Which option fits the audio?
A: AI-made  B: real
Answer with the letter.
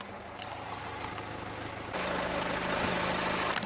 B